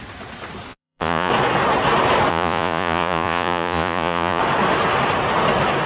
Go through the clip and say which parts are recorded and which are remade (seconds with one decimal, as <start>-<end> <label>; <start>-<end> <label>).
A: 0.0-0.7 recorded; 0.7-1.3 remade; 1.3-2.3 recorded; 2.3-4.4 remade; 4.4-5.9 recorded

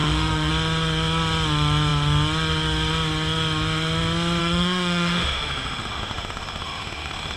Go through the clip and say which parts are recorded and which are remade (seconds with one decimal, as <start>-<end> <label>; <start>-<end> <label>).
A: 0.0-0.5 remade; 0.5-4.4 recorded; 4.4-7.4 remade